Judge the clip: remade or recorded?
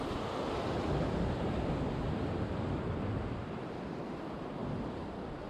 remade